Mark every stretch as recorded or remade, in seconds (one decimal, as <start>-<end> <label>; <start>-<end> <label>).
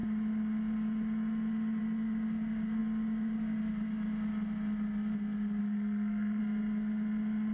0.0-5.6 recorded; 5.6-6.4 remade; 6.4-7.5 recorded